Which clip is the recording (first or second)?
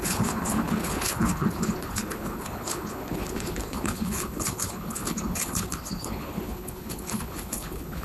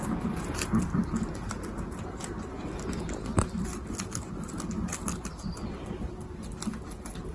second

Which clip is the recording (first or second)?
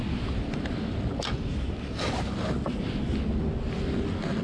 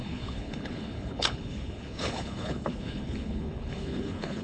first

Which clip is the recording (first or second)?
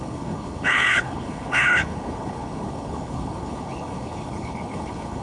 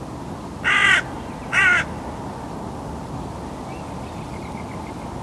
second